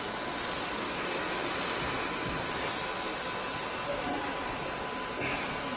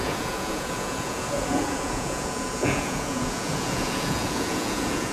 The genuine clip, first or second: first